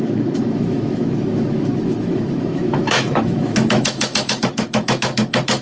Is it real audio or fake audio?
fake